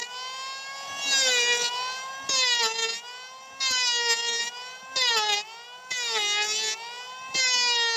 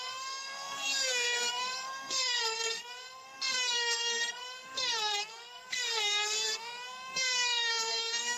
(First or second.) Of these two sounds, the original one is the first